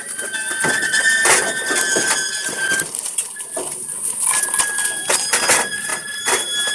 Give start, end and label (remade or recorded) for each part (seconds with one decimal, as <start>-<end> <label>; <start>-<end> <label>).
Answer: 0.0-6.7 recorded